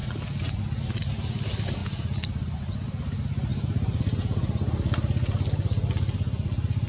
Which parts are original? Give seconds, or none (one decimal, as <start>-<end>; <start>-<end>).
0.0-6.9